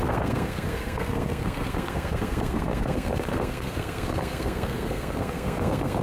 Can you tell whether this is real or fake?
fake